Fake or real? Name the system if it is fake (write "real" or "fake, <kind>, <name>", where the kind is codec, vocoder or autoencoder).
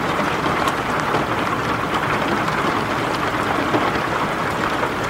fake, vocoder, BigVGAN v2